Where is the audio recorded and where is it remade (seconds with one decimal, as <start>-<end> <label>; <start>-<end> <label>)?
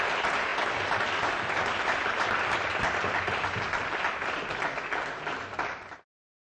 0.0-6.5 recorded